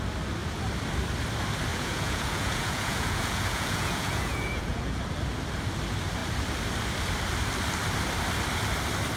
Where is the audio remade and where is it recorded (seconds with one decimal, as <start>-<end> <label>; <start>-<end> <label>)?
0.0-1.7 recorded; 1.7-5.0 remade; 5.0-9.2 recorded